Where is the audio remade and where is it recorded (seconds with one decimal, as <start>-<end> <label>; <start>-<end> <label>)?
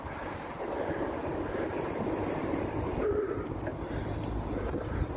0.0-5.2 recorded